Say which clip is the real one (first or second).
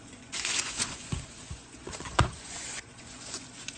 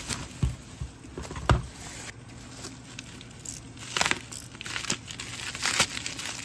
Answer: second